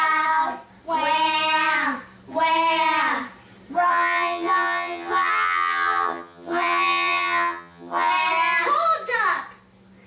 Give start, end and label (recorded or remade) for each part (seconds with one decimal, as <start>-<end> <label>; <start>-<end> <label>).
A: 0.0-3.9 recorded; 3.9-8.1 remade; 8.1-10.1 recorded